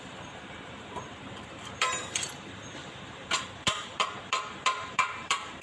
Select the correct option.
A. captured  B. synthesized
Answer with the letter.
B